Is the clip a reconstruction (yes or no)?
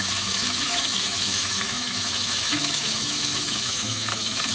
yes